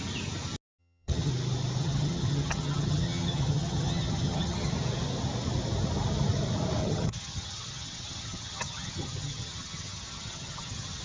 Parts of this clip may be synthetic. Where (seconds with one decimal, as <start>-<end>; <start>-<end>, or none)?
0.8-1.3; 1.8-4.7; 6.8-11.0